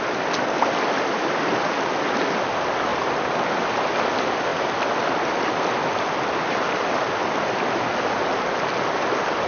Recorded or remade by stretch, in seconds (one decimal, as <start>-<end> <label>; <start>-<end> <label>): 0.0-2.9 recorded; 2.9-4.0 remade; 4.0-9.5 recorded